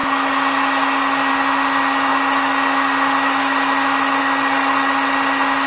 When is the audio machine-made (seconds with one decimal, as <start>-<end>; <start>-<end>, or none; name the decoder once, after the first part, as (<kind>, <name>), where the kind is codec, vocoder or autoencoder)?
none